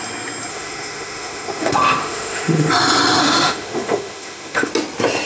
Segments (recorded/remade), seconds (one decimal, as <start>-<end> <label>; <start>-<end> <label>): 0.0-0.5 recorded; 0.5-2.7 remade; 2.7-3.2 recorded; 3.2-4.7 remade; 4.7-5.3 recorded